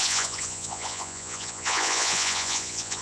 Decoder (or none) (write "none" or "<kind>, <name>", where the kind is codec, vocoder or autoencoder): vocoder, Vocos